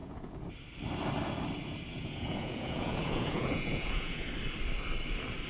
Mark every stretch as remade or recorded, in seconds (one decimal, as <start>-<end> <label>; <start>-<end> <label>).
0.0-0.5 remade; 0.5-1.9 recorded; 1.9-4.3 remade; 4.3-5.5 recorded